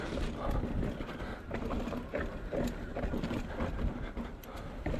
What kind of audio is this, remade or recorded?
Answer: recorded